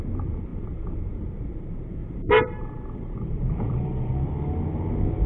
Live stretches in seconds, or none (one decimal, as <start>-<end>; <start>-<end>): 0.0-0.5; 1.1-2.0; 4.1-5.3